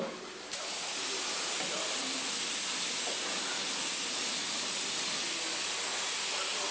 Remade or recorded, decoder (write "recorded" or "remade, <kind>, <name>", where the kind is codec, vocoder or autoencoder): recorded